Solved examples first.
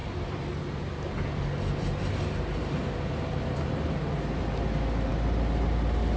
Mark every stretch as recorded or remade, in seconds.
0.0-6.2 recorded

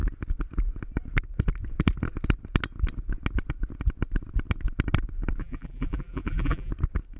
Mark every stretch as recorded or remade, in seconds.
0.0-5.4 recorded; 5.4-6.7 remade; 6.7-7.2 recorded